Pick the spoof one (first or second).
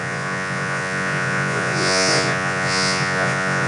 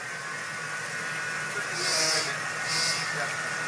first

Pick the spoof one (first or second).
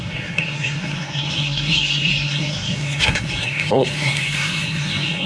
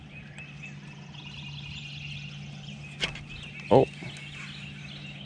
first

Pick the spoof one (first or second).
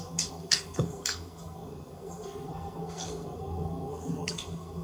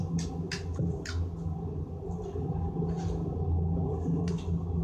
first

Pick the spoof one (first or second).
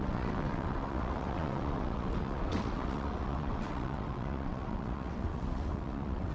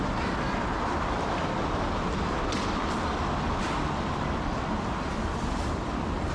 first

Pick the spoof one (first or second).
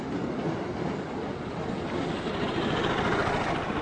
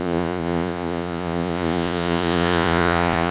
second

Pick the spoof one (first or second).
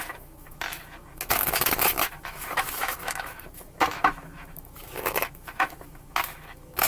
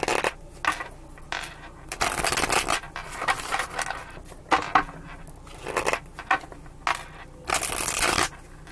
first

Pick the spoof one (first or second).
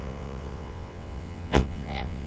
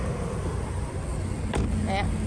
first